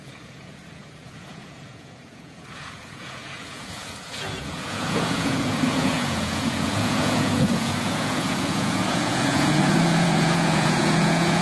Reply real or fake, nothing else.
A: fake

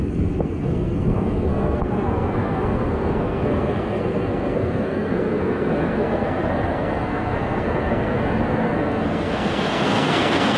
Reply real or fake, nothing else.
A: fake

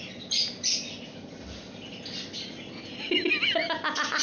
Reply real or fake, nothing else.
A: real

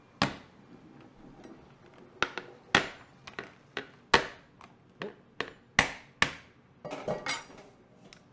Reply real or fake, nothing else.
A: real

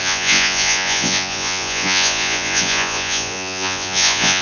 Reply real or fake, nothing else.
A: fake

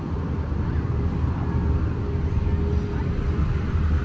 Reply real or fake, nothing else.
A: real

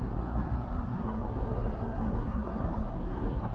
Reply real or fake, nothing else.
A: fake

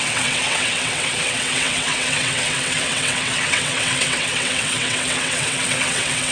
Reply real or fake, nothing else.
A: fake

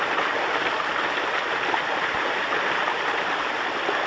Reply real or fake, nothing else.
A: real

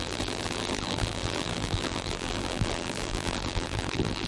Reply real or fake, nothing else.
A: fake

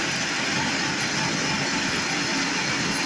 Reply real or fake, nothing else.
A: real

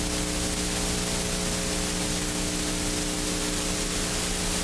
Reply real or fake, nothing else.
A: real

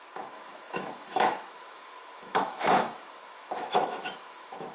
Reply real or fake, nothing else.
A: fake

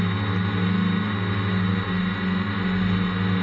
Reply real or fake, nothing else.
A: real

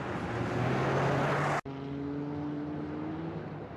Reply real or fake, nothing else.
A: real